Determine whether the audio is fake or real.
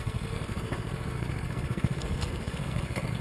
fake